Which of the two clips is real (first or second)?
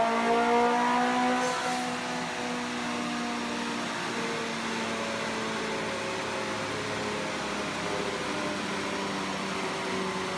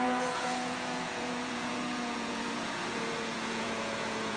first